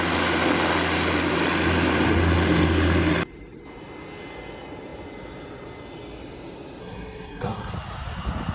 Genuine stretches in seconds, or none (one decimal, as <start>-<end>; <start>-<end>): 0.0-6.8; 7.7-8.5